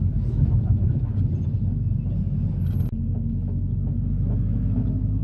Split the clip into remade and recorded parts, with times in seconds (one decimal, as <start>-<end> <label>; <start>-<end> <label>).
0.0-1.1 remade; 1.1-3.0 recorded; 3.0-5.2 remade